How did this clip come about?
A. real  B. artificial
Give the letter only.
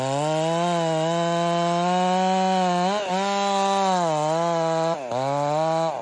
A